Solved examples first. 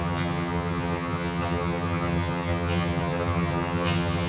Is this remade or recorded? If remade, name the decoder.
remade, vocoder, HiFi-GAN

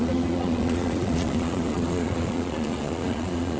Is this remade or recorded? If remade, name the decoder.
remade, vocoder, Vocos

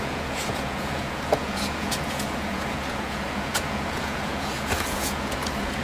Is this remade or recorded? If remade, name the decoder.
remade, vocoder, Vocos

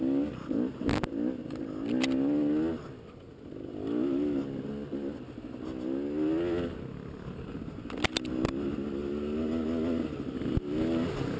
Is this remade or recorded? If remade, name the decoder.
recorded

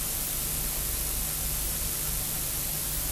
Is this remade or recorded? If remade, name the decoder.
recorded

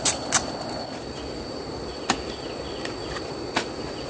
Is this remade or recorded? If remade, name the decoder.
recorded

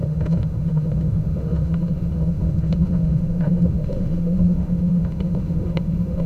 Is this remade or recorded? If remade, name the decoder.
remade, autoencoder, DAC-VAE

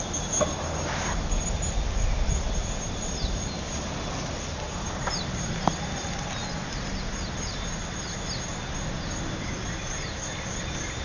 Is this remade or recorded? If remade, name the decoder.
recorded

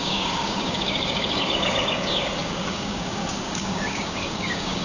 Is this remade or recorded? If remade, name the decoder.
remade, codec, DAC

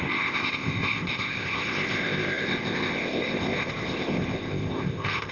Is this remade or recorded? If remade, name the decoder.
remade, codec, ZipCodec